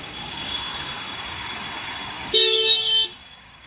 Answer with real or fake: fake